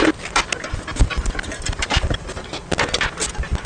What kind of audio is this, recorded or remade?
recorded